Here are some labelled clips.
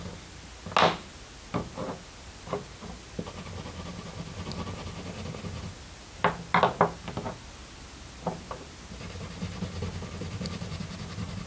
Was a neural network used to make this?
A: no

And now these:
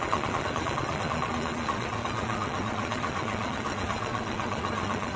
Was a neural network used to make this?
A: yes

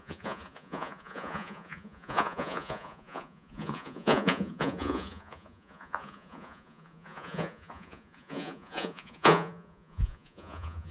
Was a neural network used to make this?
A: yes